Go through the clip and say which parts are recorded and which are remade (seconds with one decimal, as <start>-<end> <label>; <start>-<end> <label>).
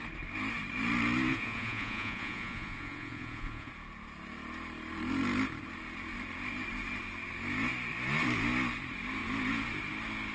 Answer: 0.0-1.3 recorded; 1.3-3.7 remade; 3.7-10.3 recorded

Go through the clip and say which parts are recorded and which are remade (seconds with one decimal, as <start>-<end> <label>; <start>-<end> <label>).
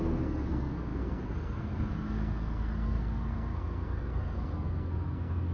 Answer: 0.0-5.5 remade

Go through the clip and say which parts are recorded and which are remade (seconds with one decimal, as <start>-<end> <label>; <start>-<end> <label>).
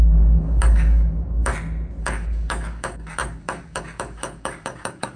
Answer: 0.0-1.5 remade; 1.5-2.0 recorded; 2.0-5.2 remade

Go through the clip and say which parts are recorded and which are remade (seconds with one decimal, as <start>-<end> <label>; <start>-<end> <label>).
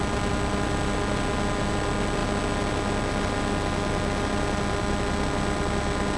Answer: 0.0-6.2 recorded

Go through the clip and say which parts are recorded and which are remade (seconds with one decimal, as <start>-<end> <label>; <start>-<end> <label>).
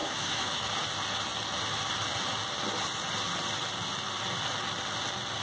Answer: 0.0-0.7 remade; 0.7-5.4 recorded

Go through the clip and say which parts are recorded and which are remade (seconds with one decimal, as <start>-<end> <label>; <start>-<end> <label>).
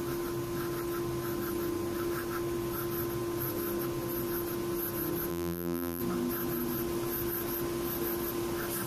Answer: 0.0-5.3 recorded; 5.3-6.0 remade; 6.0-8.9 recorded